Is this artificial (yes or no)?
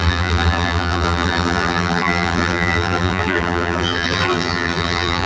yes